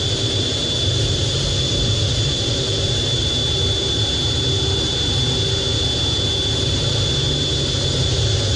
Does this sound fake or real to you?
real